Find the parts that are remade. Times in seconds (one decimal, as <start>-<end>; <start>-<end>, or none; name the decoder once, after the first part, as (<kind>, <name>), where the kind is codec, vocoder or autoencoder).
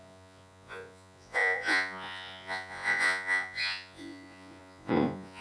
0.0-5.4 (vocoder, Vocos)